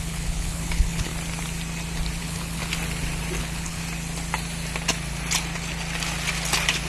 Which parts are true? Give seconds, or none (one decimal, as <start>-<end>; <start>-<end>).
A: 1.1-2.2; 2.6-3.4; 3.8-6.9